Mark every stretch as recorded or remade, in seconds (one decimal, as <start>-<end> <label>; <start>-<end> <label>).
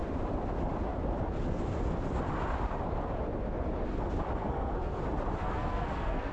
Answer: 0.0-4.4 recorded; 4.4-5.0 remade; 5.0-5.4 recorded; 5.4-6.3 remade